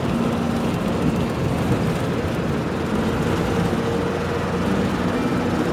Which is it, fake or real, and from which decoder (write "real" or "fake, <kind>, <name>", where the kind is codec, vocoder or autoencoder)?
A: real